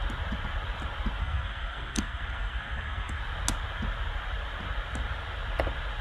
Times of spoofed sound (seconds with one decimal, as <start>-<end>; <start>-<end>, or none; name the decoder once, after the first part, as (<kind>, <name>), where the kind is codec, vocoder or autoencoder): 1.2-3.2 (codec, SNAC)

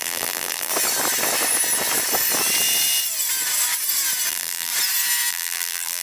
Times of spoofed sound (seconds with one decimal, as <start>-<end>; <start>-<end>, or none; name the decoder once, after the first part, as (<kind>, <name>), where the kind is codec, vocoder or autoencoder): 0.0-0.7 (vocoder, BigVGAN v2); 4.3-4.7; 5.3-6.0

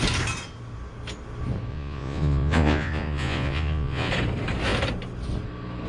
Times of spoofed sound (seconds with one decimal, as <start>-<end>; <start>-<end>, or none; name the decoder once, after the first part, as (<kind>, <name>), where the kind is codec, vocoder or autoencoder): 1.7-4.1 (vocoder, Vocos)

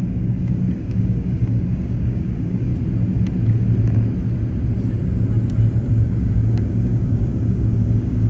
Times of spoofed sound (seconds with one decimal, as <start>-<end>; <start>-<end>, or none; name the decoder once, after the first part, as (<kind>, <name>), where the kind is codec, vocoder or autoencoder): 0.0-2.7 (codec, DAC); 5.9-8.3

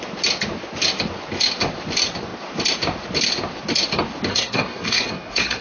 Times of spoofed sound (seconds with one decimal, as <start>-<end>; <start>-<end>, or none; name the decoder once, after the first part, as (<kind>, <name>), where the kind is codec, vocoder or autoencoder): 4.3-5.6 (codec, SNAC)

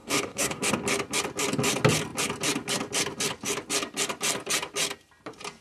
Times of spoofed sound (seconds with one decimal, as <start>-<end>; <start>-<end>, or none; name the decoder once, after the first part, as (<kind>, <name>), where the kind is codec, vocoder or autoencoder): 0.0-0.7 (codec, DAC)

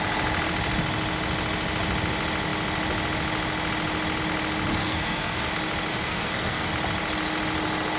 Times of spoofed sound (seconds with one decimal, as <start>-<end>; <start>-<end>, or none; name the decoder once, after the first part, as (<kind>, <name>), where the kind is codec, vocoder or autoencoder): 4.7-5.5 (codec, SNAC); 5.9-6.7